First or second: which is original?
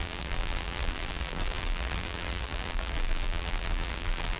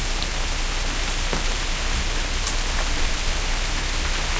second